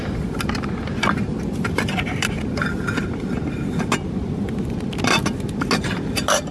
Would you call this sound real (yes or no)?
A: yes